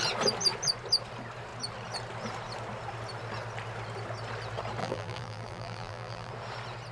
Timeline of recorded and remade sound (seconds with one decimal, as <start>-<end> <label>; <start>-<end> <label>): 0.0-4.8 recorded; 4.8-6.3 remade; 6.3-6.9 recorded